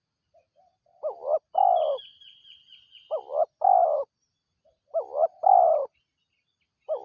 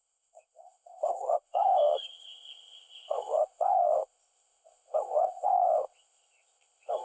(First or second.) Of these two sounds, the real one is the first